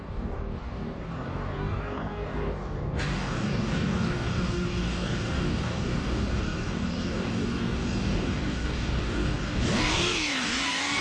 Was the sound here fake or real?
fake